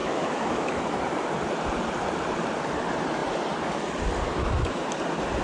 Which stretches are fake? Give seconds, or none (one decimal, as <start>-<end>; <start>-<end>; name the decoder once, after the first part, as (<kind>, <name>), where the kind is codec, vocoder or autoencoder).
0.0-0.8 (autoencoder, DAC-VAE)